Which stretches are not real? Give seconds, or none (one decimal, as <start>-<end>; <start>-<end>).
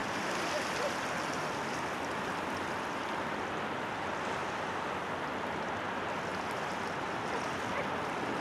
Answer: none